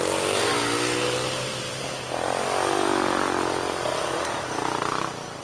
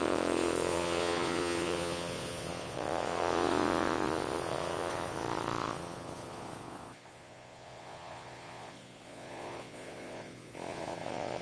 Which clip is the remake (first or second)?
second